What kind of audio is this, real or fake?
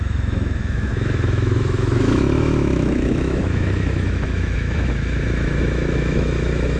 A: fake